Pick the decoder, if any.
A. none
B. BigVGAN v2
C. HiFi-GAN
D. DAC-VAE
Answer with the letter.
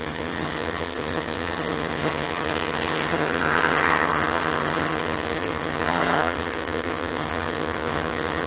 C